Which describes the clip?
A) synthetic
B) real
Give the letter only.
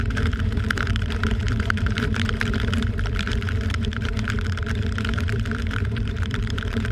A